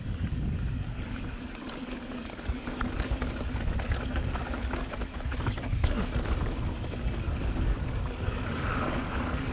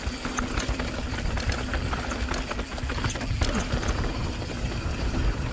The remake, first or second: first